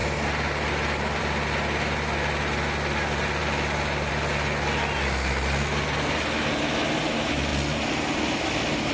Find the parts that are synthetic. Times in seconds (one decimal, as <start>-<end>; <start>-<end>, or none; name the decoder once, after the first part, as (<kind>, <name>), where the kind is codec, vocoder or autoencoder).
none